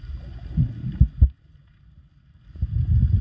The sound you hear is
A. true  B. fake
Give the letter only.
A